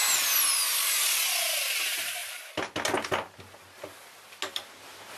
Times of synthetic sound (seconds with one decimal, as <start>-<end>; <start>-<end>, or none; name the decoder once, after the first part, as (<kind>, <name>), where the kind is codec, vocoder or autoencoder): none